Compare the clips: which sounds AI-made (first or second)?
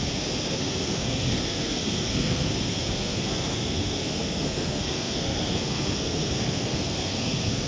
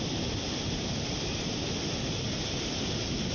first